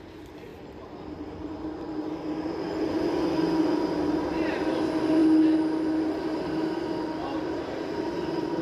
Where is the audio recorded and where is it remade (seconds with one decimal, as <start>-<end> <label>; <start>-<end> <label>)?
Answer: 0.0-8.6 recorded